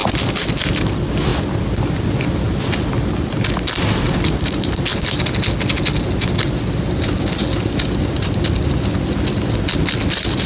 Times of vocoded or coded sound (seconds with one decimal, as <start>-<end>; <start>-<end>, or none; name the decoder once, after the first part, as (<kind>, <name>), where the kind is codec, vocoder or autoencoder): 0.7-1.3 (vocoder, BigVGAN v2); 2.5-4.9; 9.5-10.5